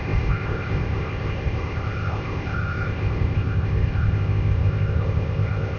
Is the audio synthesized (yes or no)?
yes